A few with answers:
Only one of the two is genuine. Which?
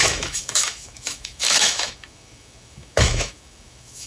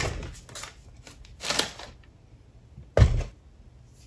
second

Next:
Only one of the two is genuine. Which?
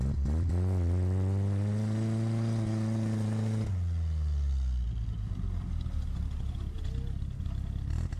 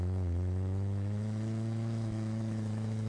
first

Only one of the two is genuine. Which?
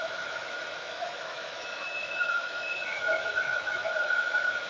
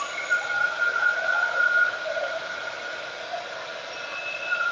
second